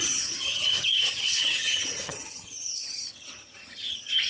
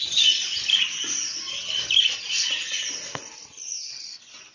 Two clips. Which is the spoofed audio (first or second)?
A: first